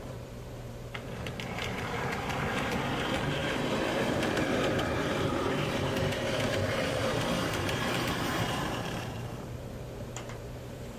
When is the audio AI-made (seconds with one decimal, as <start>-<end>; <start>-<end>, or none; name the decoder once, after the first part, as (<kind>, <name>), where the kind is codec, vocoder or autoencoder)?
0.0-11.0 (vocoder, BigVGAN v2)